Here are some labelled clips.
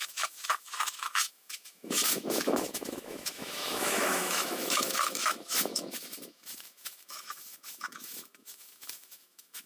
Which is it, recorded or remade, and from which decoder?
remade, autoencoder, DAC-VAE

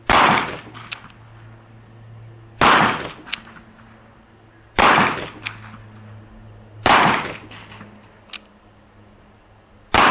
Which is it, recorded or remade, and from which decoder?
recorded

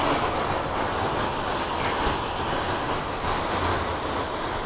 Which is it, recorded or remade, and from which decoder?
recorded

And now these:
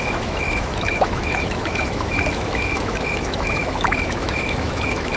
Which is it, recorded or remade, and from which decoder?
remade, autoencoder, DAC-VAE